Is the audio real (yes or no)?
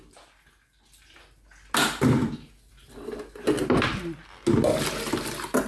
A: yes